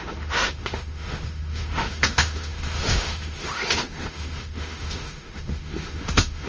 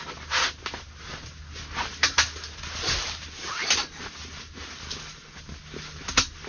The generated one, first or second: first